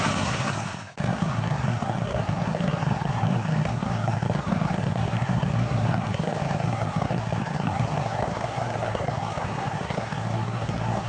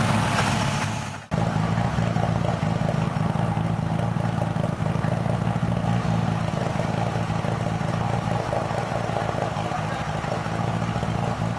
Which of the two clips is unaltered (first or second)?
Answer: second